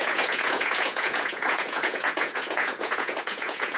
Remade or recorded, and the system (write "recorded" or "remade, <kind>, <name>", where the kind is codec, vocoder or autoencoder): remade, vocoder, Vocos